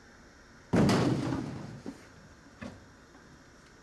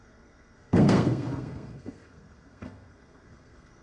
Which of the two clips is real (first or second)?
first